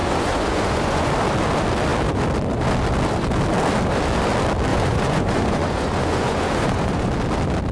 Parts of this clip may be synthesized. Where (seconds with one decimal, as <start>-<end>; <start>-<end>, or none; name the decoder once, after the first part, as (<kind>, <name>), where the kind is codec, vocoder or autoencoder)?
0.0-1.1 (vocoder, Vocos); 4.7-7.1